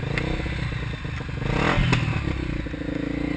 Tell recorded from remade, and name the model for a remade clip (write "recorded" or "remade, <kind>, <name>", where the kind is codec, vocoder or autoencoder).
recorded